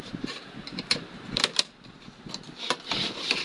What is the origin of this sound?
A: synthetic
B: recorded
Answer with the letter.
B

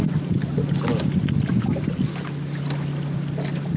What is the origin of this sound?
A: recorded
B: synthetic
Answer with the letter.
A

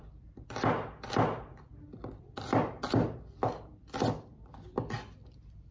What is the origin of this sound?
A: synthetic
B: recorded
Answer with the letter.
B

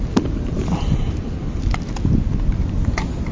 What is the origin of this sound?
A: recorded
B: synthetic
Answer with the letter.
A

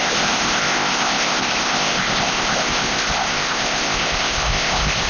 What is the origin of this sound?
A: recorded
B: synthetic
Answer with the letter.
B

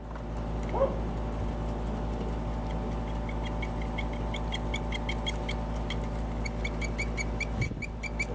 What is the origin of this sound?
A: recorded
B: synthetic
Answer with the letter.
A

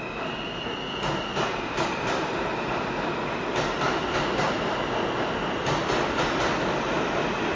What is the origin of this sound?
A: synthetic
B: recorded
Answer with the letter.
B